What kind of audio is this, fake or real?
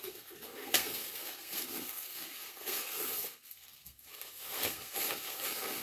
fake